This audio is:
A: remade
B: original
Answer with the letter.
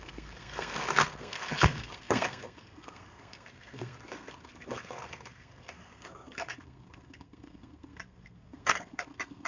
A